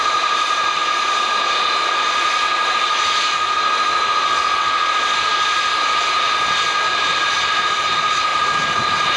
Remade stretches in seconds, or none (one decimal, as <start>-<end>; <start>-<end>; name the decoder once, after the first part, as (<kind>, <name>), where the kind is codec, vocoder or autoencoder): 0.0-0.8 (vocoder, BigVGAN v2); 2.7-8.3